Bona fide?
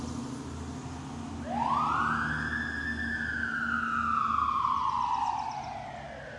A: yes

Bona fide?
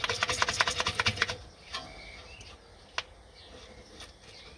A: yes